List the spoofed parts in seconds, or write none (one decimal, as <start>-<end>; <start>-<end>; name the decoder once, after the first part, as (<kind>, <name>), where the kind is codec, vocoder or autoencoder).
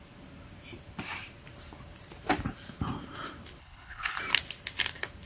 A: 3.6-4.2 (codec, HILCodec)